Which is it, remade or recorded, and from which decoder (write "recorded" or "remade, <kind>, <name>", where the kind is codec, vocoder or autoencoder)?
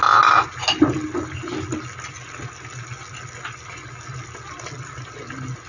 recorded